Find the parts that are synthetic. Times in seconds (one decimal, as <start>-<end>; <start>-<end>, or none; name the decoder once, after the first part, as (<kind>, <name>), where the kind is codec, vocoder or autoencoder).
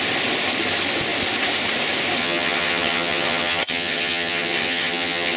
2.2-5.4 (vocoder, HiFi-GAN)